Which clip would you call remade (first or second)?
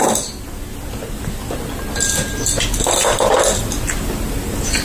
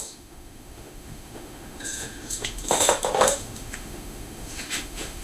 second